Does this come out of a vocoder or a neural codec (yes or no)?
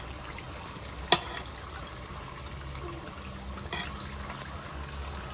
no